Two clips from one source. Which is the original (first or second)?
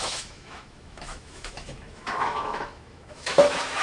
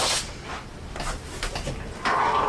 second